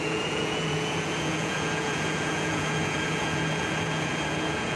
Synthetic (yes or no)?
yes